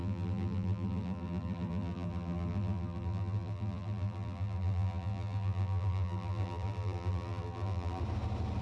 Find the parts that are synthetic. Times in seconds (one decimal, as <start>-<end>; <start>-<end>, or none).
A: 0.0-8.0